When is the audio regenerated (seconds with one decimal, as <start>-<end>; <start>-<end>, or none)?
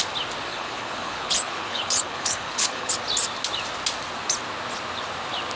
0.5-2.9